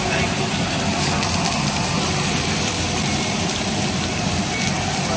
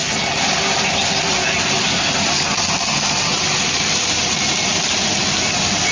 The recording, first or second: second